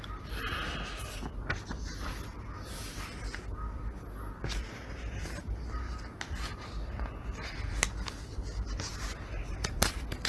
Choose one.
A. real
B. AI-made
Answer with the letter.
A